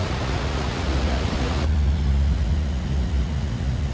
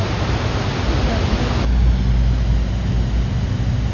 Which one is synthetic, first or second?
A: first